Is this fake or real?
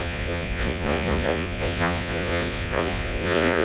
fake